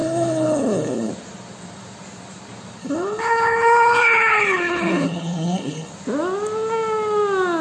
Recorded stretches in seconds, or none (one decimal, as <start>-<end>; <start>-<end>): 1.1-2.8; 5.9-7.6